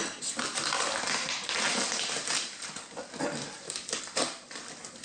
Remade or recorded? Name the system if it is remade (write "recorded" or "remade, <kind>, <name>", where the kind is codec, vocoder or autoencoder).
recorded